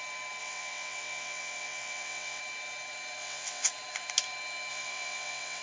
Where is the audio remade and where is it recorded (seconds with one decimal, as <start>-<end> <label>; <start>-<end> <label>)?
0.0-0.4 recorded; 0.4-2.4 remade; 2.4-3.2 recorded; 3.2-3.7 remade; 3.7-4.7 recorded; 4.7-5.6 remade